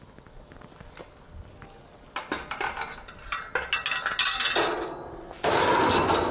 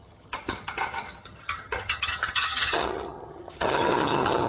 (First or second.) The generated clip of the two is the second